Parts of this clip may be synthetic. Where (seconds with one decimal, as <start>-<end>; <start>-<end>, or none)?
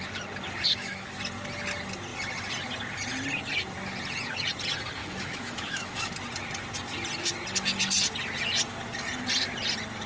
0.7-1.2; 5.0-6.1